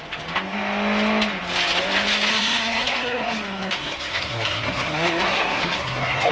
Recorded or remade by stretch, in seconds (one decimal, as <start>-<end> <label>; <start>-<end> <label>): 0.0-2.3 recorded; 2.3-6.3 remade